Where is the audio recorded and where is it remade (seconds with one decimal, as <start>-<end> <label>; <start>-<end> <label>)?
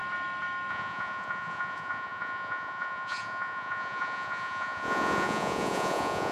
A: 0.0-0.7 recorded; 0.7-6.3 remade